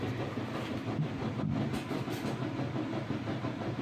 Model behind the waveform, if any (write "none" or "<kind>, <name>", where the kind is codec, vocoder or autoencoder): none